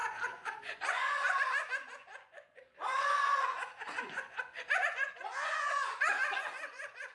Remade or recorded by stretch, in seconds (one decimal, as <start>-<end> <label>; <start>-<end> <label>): 0.0-7.1 remade